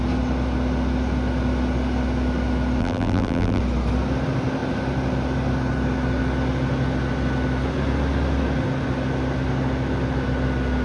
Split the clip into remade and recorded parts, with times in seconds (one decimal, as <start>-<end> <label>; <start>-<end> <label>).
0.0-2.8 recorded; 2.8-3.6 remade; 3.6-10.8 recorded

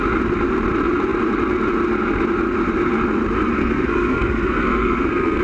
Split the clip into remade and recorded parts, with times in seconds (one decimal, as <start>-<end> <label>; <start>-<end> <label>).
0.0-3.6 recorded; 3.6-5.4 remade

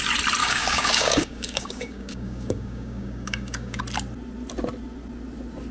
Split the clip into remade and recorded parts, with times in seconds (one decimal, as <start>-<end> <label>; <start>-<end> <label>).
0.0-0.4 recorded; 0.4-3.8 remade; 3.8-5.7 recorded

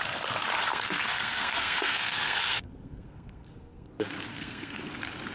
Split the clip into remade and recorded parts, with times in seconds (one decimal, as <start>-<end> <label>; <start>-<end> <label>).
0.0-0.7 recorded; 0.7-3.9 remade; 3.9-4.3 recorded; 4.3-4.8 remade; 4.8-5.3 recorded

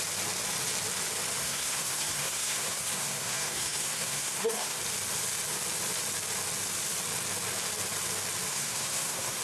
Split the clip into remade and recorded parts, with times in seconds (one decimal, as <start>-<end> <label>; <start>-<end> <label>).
0.0-1.4 recorded; 1.4-4.8 remade; 4.8-8.5 recorded; 8.5-9.4 remade